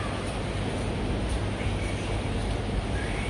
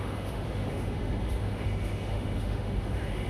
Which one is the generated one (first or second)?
second